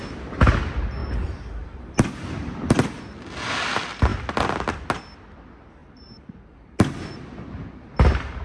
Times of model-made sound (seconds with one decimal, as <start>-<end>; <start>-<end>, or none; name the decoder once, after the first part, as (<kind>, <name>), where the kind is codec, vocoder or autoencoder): 1.0-3.0 (vocoder, BigVGAN v2); 5.8-7.1